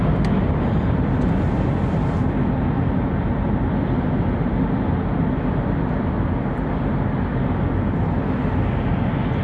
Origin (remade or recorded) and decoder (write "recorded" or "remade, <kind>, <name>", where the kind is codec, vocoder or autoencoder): recorded